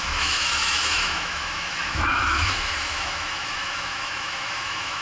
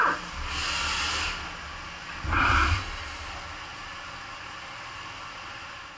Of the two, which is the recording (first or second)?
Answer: second